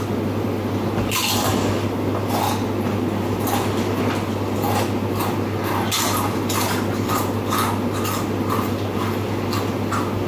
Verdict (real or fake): real